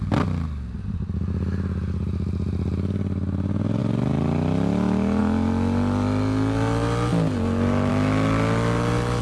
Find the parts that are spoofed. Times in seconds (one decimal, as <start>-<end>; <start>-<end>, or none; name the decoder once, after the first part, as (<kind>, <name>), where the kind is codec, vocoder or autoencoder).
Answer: none